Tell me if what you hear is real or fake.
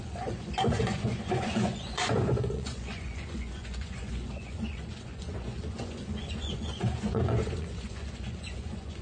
fake